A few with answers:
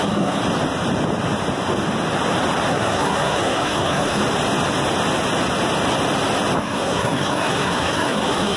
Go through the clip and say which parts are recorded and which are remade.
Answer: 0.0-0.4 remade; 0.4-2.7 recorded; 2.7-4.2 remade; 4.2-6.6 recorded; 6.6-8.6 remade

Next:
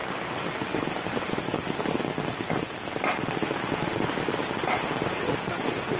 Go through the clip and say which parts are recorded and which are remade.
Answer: 0.0-6.0 recorded